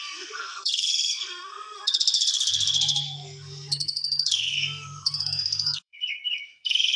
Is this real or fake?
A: fake